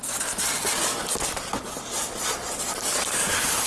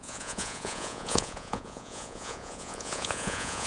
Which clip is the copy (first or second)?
second